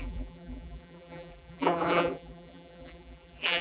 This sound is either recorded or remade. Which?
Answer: remade